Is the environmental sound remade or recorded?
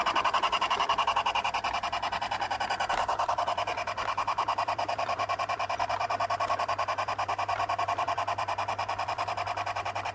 remade